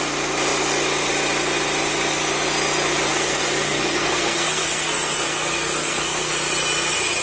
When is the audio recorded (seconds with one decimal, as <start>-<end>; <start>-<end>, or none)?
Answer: 0.0-3.1; 6.3-7.2